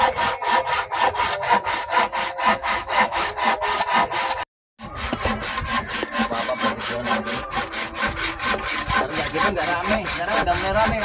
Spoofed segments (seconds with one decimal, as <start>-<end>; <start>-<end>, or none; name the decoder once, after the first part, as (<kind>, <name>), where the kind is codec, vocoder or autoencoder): 2.6-3.3 (autoencoder, DAC-VAE)